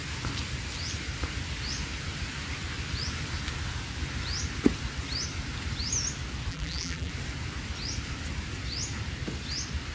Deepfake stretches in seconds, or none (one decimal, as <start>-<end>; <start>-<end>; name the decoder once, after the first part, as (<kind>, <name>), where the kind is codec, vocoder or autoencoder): 6.5-7.1 (vocoder, BigVGAN v2)

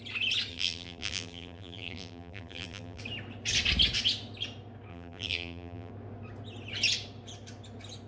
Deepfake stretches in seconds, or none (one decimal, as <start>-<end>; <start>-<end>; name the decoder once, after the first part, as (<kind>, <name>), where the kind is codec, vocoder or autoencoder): 0.5-3.0 (vocoder, BigVGAN v2); 4.9-5.9